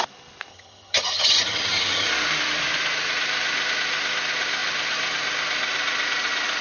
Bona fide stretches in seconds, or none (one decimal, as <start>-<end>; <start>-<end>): 0.0-0.5; 2.1-6.6